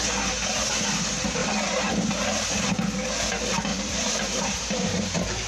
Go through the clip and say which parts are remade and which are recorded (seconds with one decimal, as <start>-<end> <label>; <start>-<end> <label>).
0.0-1.4 recorded; 1.4-2.1 remade; 2.1-3.7 recorded; 3.7-5.5 remade